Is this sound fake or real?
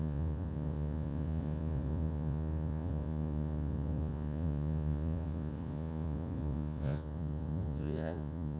fake